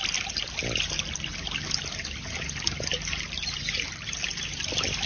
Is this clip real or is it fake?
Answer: real